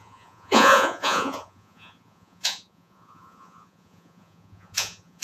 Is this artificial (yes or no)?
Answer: yes